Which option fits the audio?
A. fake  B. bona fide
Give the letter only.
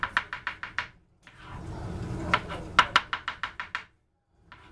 B